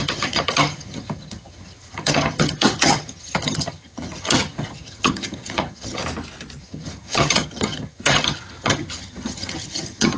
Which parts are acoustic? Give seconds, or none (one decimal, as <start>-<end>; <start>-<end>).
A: 6.0-6.6